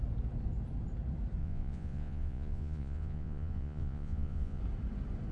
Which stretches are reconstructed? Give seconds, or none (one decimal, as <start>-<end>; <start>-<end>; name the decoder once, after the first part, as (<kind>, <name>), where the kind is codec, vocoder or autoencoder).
1.4-4.6 (vocoder, Vocos)